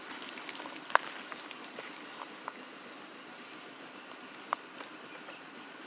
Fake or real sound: real